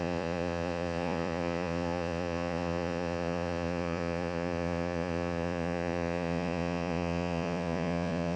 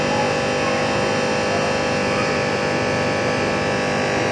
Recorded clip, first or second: second